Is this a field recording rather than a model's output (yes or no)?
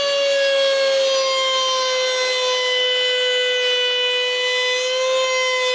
yes